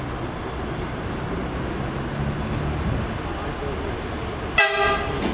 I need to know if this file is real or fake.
real